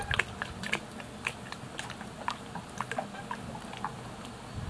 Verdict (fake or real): real